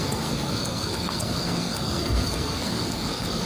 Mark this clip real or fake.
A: fake